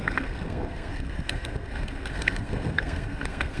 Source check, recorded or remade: remade